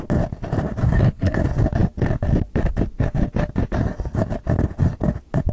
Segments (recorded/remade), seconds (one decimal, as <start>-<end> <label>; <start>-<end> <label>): 0.0-0.8 recorded; 0.8-1.4 remade; 1.4-5.5 recorded